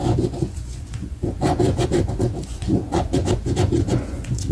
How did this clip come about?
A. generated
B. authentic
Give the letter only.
A